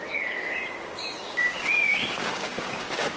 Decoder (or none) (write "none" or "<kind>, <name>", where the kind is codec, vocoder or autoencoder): codec, DAC